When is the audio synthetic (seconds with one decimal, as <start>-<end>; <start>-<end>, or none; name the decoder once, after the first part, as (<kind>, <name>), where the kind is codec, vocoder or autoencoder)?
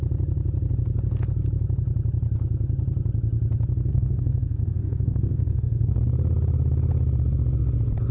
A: 3.9-6.0 (codec, SNAC)